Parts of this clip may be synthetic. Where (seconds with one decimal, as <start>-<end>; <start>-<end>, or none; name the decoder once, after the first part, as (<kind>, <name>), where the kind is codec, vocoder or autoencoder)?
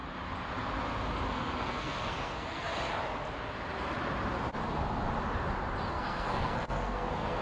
1.3-2.7 (codec, SNAC); 5.9-7.4